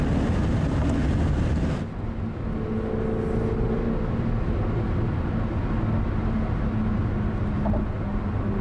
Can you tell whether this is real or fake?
real